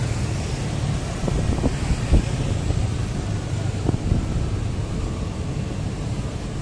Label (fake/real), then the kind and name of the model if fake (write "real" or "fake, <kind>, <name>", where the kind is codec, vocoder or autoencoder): real